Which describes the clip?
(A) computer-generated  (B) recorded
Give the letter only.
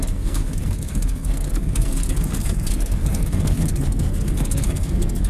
A